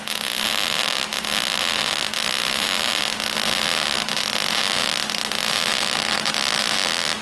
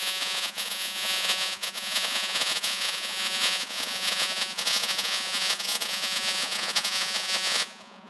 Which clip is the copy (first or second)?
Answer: second